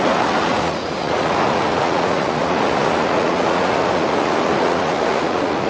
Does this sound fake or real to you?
fake